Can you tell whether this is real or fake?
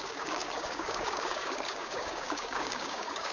fake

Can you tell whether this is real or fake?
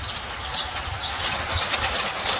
real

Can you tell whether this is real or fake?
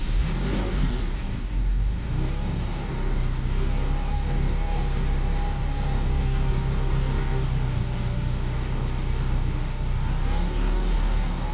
fake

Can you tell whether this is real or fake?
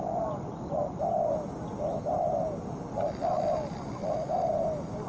real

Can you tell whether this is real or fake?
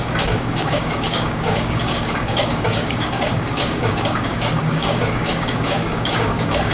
fake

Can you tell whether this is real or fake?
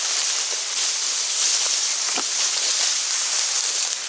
real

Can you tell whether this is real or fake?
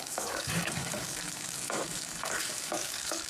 fake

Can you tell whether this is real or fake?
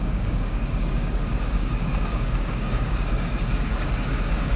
fake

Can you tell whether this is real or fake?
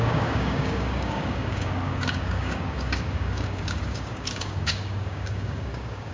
fake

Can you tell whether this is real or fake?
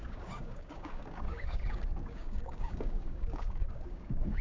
fake